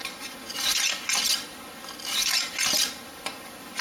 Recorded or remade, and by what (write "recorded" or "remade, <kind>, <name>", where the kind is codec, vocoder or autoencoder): recorded